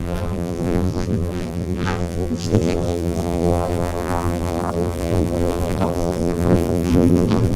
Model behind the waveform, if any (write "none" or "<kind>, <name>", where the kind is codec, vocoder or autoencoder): vocoder, BigVGAN v2